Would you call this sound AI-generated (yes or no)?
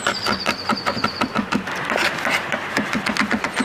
no